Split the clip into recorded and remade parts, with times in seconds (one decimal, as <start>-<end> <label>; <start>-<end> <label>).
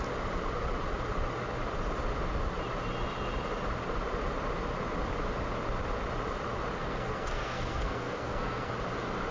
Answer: 0.0-6.8 recorded; 6.8-8.7 remade; 8.7-9.3 recorded